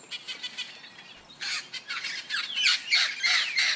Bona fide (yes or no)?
yes